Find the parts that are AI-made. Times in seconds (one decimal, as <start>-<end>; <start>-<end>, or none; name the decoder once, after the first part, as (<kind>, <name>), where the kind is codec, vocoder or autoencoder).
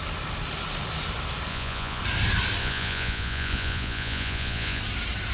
1.5-2.0 (vocoder, Vocos); 2.6-4.8